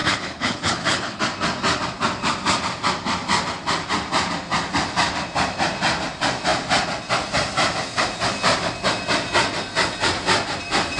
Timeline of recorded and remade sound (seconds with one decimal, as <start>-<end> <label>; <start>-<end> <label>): 0.0-1.2 remade; 1.2-11.0 recorded

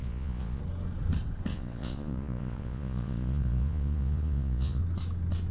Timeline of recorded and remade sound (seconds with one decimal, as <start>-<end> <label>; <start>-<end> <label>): 0.0-0.6 remade; 0.6-1.5 recorded; 1.5-4.8 remade; 4.8-5.5 recorded

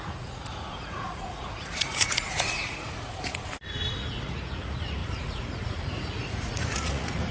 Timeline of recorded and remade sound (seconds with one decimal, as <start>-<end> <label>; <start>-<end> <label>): 0.0-3.2 remade; 3.2-3.9 recorded; 3.9-7.3 remade

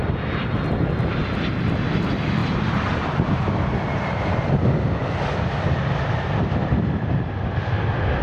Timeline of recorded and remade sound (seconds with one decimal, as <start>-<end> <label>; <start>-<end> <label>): 0.0-2.4 recorded; 2.4-3.3 remade; 3.3-8.2 recorded

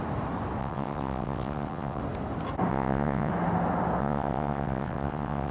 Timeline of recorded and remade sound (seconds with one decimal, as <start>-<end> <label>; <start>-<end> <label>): 0.0-0.6 recorded; 0.6-2.0 remade; 2.0-2.7 recorded; 2.7-3.3 remade; 3.3-4.0 recorded; 4.0-5.5 remade